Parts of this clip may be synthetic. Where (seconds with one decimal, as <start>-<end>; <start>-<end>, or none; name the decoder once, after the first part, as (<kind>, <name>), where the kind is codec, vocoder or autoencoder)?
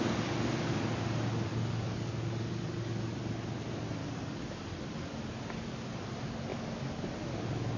1.5-2.5 (codec, DAC); 4.0-4.8